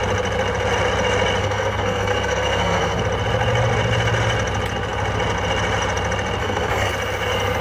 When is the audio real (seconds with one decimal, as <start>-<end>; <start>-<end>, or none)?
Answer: 0.0-1.4; 3.0-6.4; 6.9-7.6